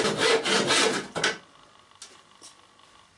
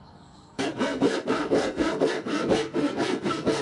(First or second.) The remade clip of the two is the second